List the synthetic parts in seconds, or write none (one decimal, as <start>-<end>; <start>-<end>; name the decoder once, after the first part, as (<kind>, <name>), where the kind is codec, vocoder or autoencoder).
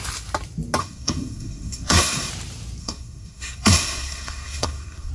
0.8-2.3 (codec, SNAC); 2.8-5.1